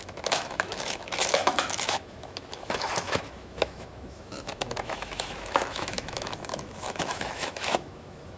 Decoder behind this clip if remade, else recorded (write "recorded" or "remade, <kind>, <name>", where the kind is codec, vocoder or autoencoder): remade, autoencoder, DAC-VAE